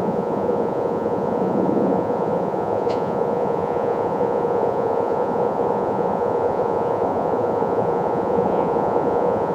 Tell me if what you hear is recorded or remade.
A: remade